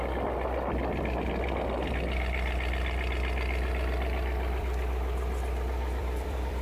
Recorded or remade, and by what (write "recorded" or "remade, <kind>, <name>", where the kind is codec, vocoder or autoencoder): remade, vocoder, BigVGAN v2